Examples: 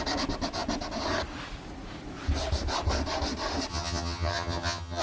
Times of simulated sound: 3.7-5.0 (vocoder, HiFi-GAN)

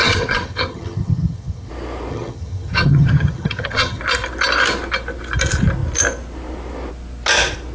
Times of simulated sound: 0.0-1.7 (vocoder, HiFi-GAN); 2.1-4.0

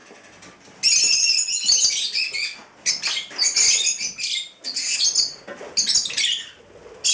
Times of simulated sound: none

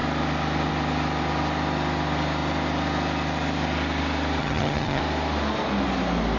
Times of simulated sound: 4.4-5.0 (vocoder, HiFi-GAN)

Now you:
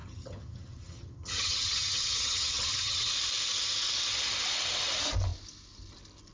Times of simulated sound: 0.0-3.1 (vocoder, HiFi-GAN)

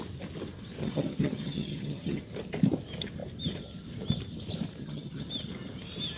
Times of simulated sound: 0.8-2.2 (vocoder, HiFi-GAN); 4.8-5.3

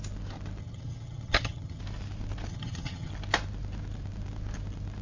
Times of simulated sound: 0.6-1.8 (vocoder, HiFi-GAN); 2.5-3.1

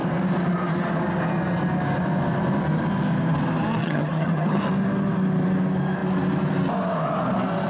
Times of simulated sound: 3.8-4.6 (vocoder, HiFi-GAN)